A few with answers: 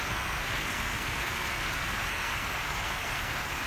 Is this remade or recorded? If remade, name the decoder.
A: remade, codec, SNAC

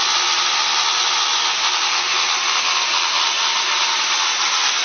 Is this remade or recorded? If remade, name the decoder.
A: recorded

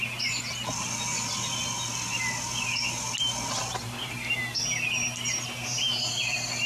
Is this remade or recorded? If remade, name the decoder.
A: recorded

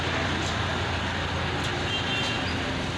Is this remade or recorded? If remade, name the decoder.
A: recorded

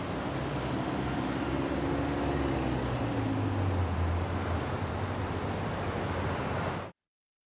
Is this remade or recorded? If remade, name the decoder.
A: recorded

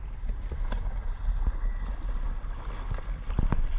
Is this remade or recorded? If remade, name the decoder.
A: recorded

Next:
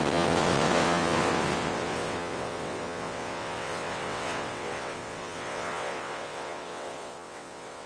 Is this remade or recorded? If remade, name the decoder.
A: remade, vocoder, WaveNeXt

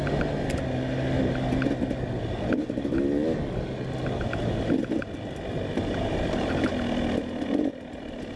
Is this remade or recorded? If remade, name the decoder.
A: recorded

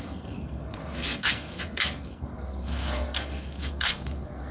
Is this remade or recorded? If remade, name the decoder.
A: remade, codec, SNAC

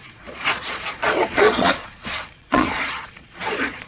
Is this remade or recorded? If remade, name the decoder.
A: remade, vocoder, Vocos